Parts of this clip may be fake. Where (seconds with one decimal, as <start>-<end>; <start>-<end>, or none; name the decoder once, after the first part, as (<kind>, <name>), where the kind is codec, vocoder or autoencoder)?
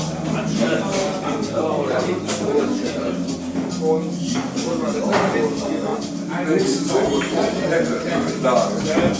1.3-2.6 (vocoder, BigVGAN v2); 5.9-6.9